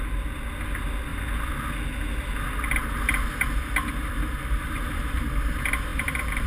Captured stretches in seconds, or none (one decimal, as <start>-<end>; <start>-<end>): 0.0-2.8; 5.0-5.9